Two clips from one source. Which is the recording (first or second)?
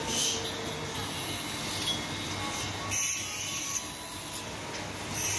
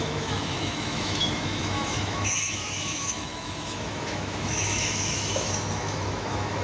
first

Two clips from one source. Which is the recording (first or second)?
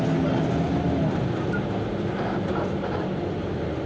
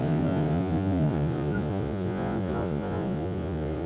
first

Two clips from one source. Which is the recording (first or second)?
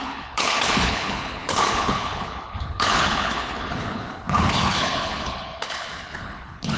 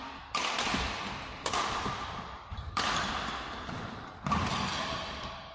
second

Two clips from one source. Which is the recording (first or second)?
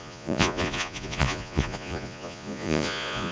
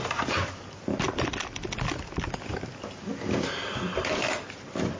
second